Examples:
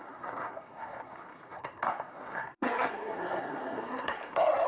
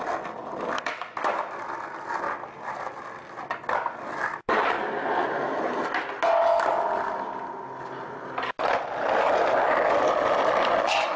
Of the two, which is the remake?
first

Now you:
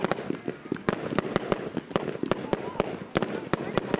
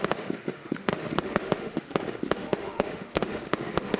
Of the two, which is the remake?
second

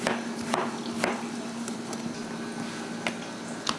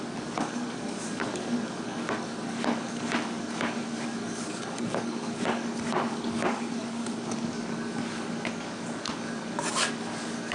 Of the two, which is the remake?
second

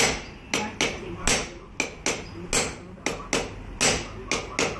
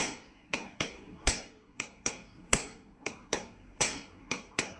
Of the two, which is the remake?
second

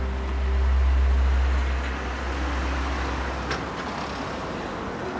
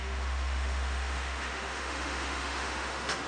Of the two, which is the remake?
second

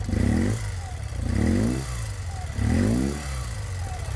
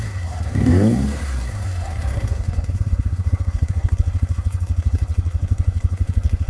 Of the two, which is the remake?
second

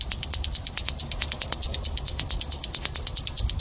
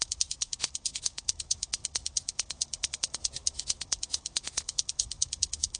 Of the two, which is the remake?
second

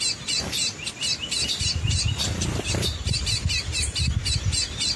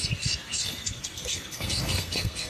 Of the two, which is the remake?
second